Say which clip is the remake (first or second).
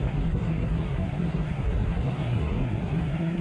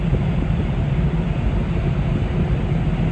first